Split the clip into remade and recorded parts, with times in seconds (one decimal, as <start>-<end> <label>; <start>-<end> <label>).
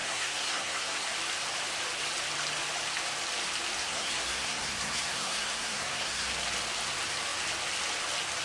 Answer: 0.0-1.1 remade; 1.1-3.8 recorded; 3.8-6.3 remade; 6.3-8.4 recorded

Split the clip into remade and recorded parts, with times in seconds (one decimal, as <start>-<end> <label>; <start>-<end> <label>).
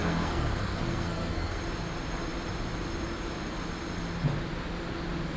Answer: 0.0-1.6 remade; 1.6-5.4 recorded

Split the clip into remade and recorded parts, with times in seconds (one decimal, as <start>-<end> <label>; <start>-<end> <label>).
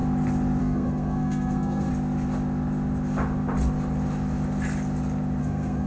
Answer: 0.0-0.6 recorded; 0.6-1.9 remade; 1.9-5.4 recorded; 5.4-5.9 remade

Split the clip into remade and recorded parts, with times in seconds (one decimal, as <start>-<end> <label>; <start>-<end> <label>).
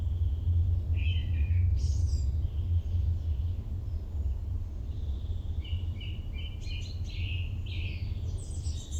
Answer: 0.0-4.4 recorded; 4.4-6.2 remade; 6.2-9.0 recorded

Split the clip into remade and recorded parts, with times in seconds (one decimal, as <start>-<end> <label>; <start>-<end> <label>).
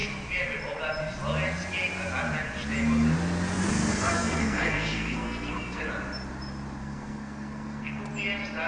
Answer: 0.0-3.9 recorded; 3.9-5.8 remade; 5.8-6.8 recorded; 6.8-8.0 remade; 8.0-8.7 recorded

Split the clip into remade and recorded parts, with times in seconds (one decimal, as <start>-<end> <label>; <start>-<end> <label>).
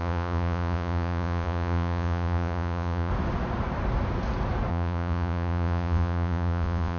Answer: 0.0-3.1 remade; 3.1-4.7 recorded; 4.7-7.0 remade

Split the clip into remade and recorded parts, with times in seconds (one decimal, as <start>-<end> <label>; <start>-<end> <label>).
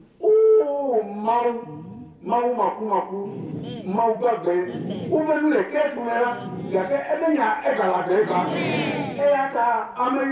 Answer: 0.0-3.5 recorded; 3.5-4.6 remade; 4.6-9.6 recorded; 9.6-10.3 remade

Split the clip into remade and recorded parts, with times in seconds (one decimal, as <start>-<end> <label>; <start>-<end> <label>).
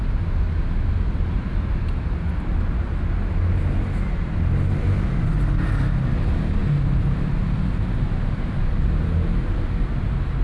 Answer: 0.0-10.4 recorded